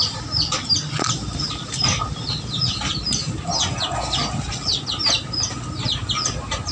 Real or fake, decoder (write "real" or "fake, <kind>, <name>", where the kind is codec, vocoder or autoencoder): real